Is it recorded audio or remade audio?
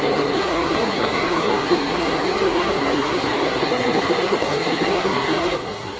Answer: remade